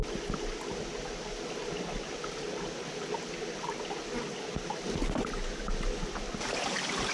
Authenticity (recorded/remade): recorded